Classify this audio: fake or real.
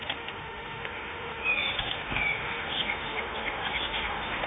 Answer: fake